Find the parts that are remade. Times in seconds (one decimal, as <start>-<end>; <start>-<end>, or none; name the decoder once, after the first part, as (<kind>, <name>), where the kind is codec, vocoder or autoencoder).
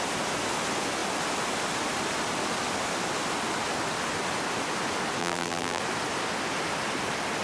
5.2-5.8 (vocoder, BigVGAN v2)